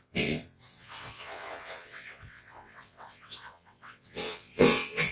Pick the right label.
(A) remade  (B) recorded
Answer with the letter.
A